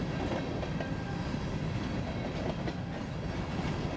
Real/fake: real